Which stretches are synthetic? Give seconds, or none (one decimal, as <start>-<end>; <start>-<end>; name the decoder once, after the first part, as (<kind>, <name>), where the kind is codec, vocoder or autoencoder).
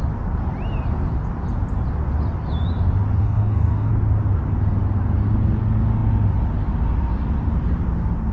3.2-3.9 (codec, DAC)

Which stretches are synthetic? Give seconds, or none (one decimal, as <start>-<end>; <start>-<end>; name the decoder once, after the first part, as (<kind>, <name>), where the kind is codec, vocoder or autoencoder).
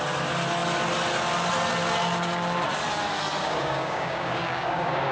3.4-5.1 (codec, DAC)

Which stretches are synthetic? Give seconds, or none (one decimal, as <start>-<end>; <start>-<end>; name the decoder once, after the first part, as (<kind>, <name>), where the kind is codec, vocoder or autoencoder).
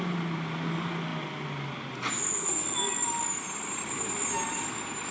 none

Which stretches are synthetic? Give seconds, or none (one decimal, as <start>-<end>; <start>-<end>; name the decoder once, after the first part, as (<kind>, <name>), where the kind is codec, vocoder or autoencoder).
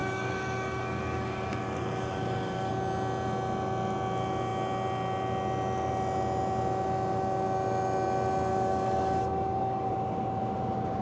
0.0-2.7 (codec, DAC); 8.5-9.9